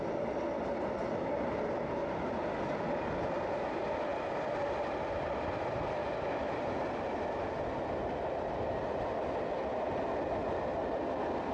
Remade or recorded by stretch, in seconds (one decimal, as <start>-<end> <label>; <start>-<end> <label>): 0.0-4.1 recorded; 4.1-5.6 remade; 5.6-11.5 recorded